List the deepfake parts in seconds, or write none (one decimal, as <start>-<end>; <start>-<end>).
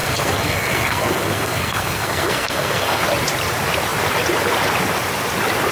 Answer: 0.0-3.0